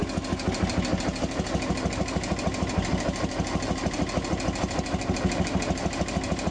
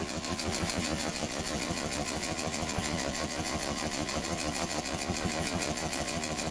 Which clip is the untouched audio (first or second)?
first